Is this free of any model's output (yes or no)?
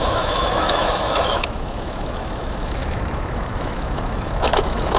no